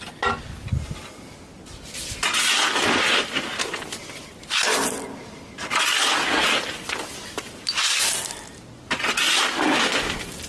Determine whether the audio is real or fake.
real